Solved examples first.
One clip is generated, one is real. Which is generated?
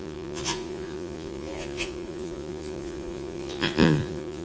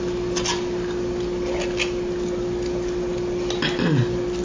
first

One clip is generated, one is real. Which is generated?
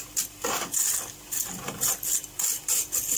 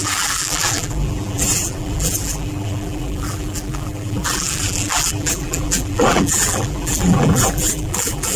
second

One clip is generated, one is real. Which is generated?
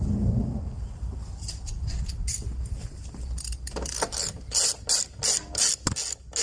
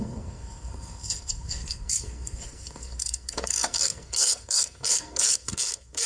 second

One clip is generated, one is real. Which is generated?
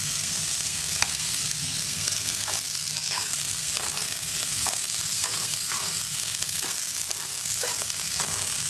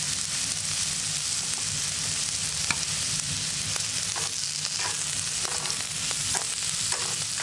first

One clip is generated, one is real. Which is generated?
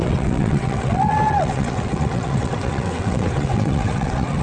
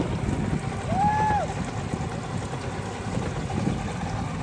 first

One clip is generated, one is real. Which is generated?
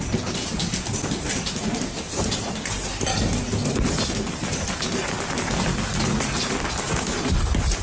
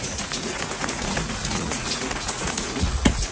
second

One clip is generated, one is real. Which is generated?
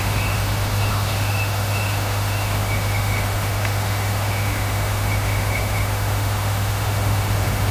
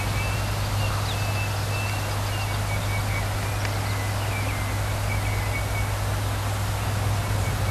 first